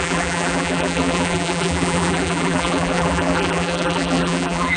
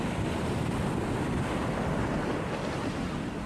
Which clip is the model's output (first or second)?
first